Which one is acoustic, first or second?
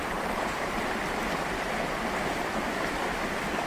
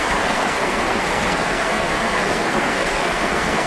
first